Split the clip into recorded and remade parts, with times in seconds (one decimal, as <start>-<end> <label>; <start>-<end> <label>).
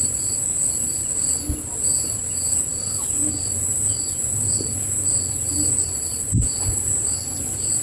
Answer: 0.0-7.8 recorded